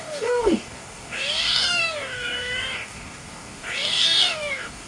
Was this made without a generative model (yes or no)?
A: no